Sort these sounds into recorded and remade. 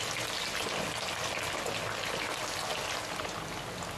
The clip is recorded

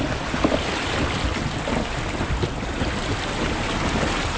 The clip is remade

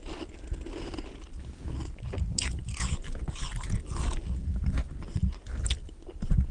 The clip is recorded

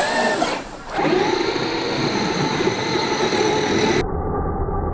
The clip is recorded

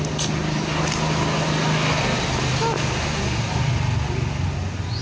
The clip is recorded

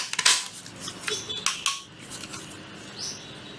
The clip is recorded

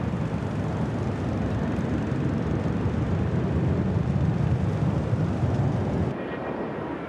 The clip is recorded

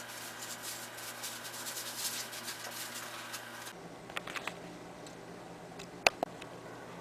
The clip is recorded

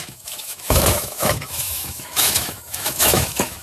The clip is remade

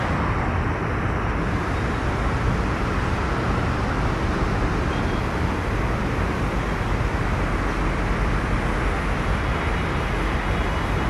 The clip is recorded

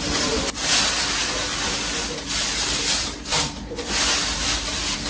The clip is recorded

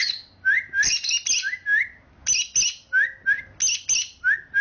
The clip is recorded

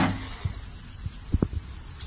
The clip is recorded